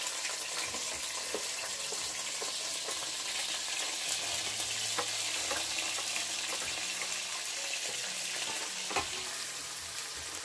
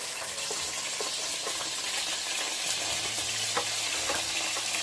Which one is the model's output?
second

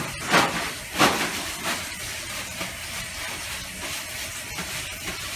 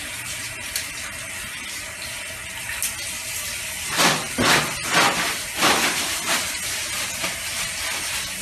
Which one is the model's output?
first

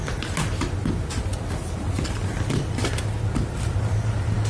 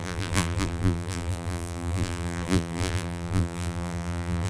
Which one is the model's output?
second